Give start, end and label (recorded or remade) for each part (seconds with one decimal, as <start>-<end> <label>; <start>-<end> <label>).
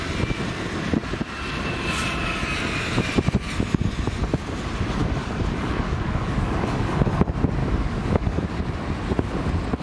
0.0-5.0 recorded; 5.0-7.1 remade; 7.1-7.6 recorded; 7.6-8.5 remade; 8.5-9.8 recorded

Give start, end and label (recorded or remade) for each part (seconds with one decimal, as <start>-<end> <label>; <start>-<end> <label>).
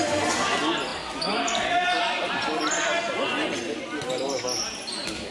0.0-5.3 recorded